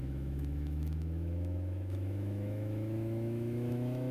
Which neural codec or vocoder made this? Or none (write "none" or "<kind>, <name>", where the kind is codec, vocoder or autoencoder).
autoencoder, DAC-VAE